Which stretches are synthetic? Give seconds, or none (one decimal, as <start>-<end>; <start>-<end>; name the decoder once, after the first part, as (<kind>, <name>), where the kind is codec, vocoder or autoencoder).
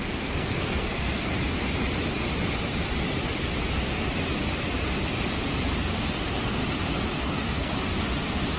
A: 0.0-1.3 (codec, SNAC); 6.0-6.6; 7.2-7.7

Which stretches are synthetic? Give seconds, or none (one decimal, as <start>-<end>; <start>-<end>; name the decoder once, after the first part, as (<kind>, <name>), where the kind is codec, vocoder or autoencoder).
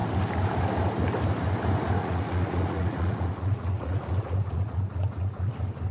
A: 2.0-5.5 (vocoder, Vocos)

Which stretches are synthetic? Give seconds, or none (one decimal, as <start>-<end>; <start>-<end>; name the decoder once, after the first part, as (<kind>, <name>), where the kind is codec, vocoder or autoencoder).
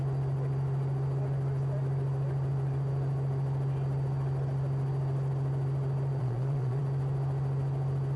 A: 6.2-6.8 (vocoder, Vocos)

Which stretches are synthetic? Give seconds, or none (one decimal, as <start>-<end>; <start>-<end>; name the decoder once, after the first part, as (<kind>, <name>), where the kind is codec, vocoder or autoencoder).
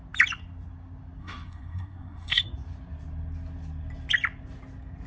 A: 1.2-2.4 (codec, SNAC)